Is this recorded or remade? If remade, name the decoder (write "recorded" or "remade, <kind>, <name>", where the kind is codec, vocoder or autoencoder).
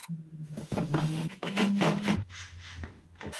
remade, autoencoder, DAC-VAE